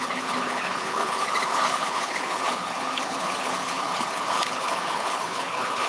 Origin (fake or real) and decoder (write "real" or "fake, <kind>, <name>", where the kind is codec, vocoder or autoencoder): fake, codec, HILCodec